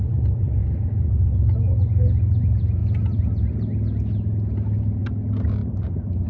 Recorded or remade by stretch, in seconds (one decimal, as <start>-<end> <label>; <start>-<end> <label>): 0.0-0.6 recorded; 0.6-1.1 remade; 1.1-6.3 recorded